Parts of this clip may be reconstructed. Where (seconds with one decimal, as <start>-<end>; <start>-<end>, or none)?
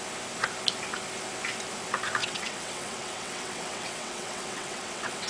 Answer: 2.2-5.3